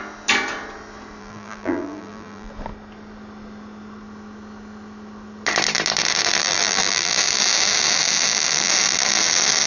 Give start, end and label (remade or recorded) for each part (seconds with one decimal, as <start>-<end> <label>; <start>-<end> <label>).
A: 0.0-1.2 recorded; 1.2-2.5 remade; 2.5-6.4 recorded; 6.4-7.1 remade; 7.1-9.7 recorded